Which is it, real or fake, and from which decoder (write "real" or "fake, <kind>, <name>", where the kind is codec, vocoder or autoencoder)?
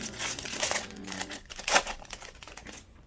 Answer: fake, vocoder, Vocos